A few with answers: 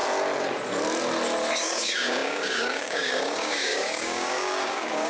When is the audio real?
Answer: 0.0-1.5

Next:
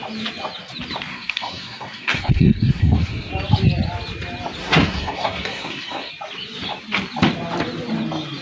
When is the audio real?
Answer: 0.0-1.1; 3.3-4.6; 6.1-8.4